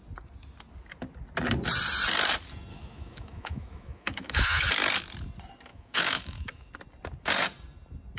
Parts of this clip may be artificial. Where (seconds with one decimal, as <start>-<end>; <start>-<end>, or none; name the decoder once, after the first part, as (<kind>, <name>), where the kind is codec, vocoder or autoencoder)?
2.7-4.6 (autoencoder, DAC-VAE); 5.7-6.7